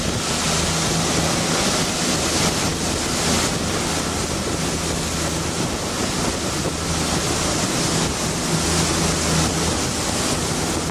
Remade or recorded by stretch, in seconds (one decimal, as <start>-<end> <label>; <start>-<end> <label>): 0.0-10.9 recorded